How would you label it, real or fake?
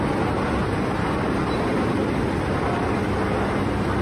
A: real